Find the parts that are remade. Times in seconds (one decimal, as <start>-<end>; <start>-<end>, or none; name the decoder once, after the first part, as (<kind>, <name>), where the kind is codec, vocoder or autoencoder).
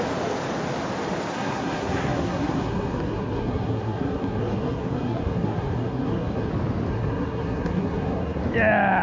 1.3-6.5 (codec, SNAC); 6.9-8.4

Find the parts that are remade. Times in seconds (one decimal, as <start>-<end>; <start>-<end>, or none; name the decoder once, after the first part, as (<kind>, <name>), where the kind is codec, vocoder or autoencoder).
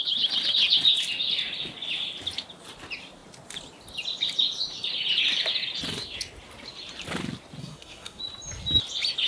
7.6-8.2 (codec, SNAC)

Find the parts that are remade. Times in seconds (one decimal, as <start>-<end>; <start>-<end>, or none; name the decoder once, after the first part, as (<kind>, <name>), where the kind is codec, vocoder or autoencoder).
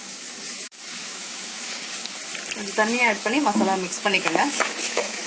0.0-2.2 (codec, DAC); 3.0-5.3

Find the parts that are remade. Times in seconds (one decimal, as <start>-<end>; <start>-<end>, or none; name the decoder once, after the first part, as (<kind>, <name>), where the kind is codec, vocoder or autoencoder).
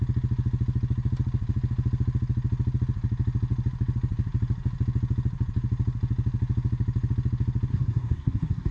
7.7-8.7 (codec, SNAC)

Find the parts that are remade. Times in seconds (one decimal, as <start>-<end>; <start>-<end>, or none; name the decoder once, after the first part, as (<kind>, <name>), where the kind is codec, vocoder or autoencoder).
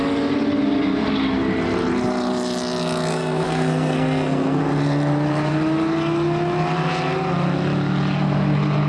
3.1-4.6 (codec, SNAC)